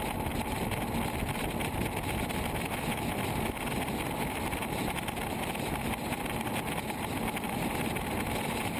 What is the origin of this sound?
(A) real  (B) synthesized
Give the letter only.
A